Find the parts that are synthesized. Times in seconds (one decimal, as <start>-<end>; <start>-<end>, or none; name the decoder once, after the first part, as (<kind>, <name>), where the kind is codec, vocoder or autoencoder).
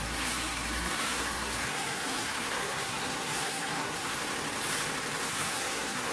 0.0-4.2 (codec, SNAC); 5.3-6.1